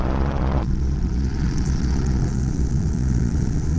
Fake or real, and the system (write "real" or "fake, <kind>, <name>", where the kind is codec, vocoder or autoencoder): fake, vocoder, Vocos